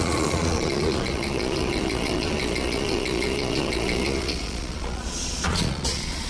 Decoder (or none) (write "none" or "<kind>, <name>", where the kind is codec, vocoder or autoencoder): vocoder, Vocos